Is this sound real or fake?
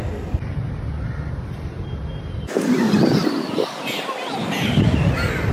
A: real